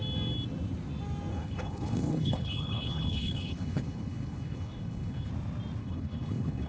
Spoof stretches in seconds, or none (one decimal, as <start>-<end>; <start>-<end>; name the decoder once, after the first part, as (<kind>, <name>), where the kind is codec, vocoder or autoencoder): 1.3-5.3 (codec, HILCodec); 5.8-6.7